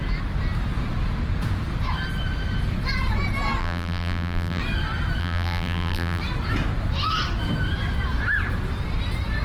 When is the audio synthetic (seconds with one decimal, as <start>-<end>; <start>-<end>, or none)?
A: 3.6-4.6; 5.2-6.2